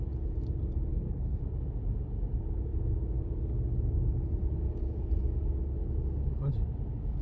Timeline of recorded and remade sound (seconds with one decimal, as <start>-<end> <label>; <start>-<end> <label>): 0.0-0.9 recorded; 0.9-1.4 remade; 1.4-7.2 recorded